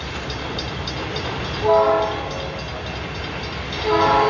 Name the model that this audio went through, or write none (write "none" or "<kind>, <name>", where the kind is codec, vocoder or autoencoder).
none